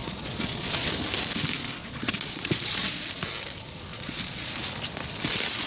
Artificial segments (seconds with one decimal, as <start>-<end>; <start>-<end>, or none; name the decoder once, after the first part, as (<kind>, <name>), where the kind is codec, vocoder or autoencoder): 0.0-0.9 (vocoder, Vocos); 1.8-3.0; 3.9-4.4